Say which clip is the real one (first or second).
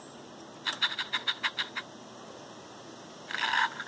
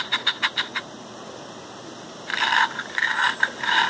first